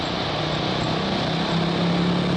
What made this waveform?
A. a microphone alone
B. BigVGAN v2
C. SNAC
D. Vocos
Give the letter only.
A